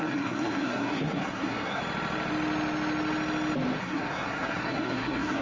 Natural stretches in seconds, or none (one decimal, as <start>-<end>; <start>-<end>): 1.8-3.8